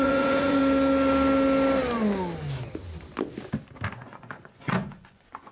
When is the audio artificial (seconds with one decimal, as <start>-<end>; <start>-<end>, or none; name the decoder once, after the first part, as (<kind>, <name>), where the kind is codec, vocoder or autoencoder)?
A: 0.0-0.6 (vocoder, Vocos); 3.9-5.5